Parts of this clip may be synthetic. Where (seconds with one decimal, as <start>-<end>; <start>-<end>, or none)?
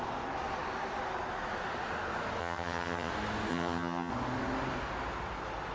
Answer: 2.4-3.1; 3.5-4.1